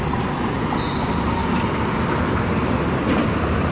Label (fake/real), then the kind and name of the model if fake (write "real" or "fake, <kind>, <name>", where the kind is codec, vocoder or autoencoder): real